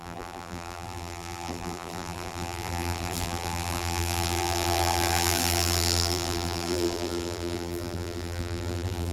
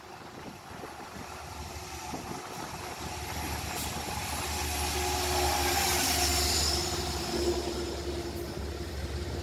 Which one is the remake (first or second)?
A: first